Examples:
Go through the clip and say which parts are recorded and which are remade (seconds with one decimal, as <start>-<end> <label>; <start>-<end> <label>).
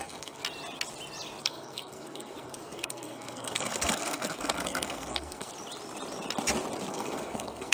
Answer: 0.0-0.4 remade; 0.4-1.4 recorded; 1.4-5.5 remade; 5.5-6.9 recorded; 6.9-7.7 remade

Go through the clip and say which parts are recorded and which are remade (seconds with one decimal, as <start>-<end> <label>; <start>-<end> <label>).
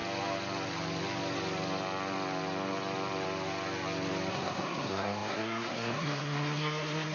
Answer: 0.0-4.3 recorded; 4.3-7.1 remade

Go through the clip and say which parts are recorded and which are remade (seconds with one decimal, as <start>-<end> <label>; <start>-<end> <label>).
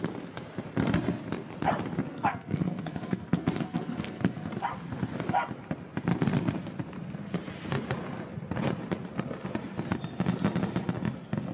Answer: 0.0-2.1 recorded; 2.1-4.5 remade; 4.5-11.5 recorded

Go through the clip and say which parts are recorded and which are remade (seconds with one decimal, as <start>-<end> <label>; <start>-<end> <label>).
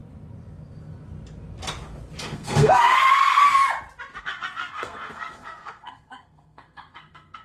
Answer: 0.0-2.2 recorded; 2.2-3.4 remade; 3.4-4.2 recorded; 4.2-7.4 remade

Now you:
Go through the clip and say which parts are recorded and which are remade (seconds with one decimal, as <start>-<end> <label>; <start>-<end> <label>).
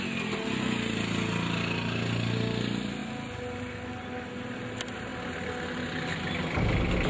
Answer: 0.0-7.1 recorded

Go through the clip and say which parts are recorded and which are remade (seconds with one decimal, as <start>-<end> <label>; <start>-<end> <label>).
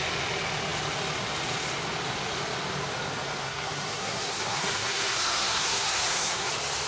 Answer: 0.0-3.4 recorded; 3.4-6.5 remade; 6.5-6.9 recorded